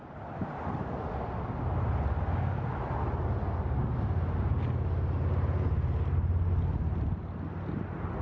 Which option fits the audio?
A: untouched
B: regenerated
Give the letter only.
A